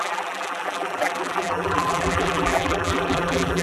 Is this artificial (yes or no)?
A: yes